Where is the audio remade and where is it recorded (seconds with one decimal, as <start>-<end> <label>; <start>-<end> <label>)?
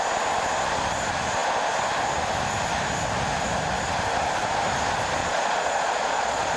0.0-5.2 recorded; 5.2-6.6 remade